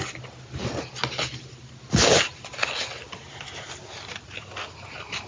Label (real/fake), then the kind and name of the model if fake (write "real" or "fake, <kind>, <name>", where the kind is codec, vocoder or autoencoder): real